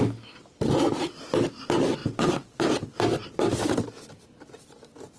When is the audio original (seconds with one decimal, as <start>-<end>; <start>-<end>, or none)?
0.0-2.0; 2.7-3.2; 3.7-5.2